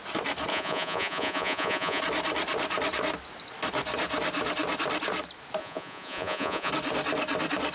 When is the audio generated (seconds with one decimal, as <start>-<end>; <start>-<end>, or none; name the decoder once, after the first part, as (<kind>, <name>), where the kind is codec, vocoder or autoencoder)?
0.5-2.0 (vocoder, Vocos); 5.6-6.7